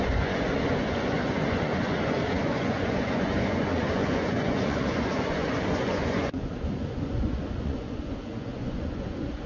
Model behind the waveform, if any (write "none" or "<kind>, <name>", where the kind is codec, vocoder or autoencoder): vocoder, Vocos